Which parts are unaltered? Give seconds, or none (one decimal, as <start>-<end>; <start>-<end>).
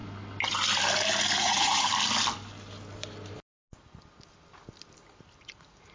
0.0-1.4; 1.9-5.4